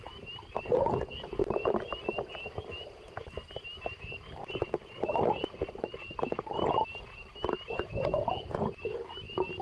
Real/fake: real